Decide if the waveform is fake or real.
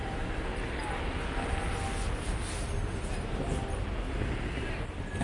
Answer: real